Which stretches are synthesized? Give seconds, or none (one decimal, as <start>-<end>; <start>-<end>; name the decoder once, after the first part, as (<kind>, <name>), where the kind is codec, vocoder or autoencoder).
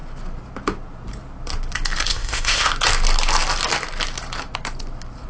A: 2.1-2.7 (codec, ZipCodec)